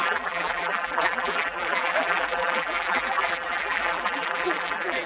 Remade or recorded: remade